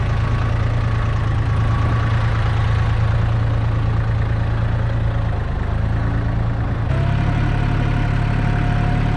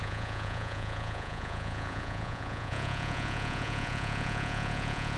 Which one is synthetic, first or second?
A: second